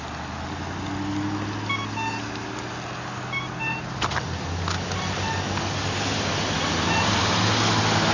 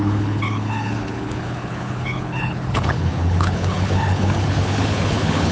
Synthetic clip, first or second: second